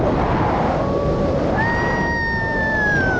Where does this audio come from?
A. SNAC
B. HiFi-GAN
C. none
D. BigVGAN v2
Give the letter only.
C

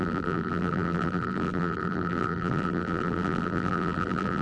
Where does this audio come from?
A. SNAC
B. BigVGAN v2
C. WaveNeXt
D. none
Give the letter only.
B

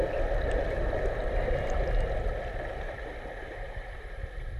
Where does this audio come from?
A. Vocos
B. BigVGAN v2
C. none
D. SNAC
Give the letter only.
B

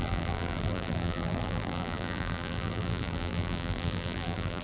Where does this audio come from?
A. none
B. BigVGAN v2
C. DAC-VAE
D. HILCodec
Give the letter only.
B